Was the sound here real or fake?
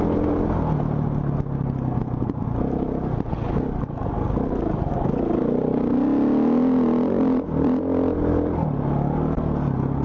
real